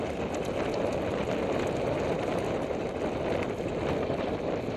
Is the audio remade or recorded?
recorded